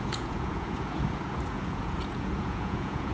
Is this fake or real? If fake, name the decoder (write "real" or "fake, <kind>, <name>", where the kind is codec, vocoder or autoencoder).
fake, vocoder, Vocos